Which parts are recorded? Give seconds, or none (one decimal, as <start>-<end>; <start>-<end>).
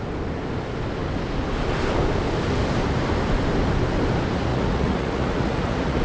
0.0-4.5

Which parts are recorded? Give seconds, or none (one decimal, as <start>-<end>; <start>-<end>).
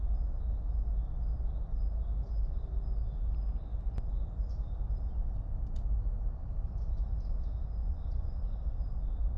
0.0-7.8; 8.4-9.4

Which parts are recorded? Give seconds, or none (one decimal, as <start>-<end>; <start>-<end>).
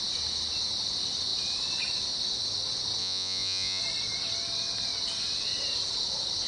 0.0-3.0; 3.8-6.5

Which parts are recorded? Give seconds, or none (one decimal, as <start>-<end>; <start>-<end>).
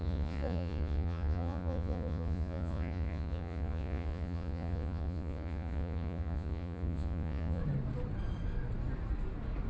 7.6-9.7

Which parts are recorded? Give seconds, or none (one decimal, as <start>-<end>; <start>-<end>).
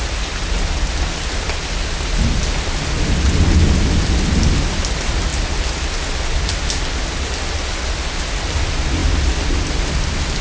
0.0-10.4